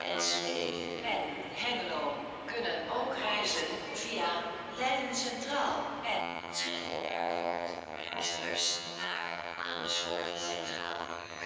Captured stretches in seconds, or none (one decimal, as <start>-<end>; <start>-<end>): 1.0-6.2